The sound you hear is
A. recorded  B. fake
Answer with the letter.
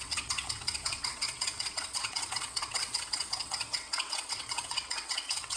B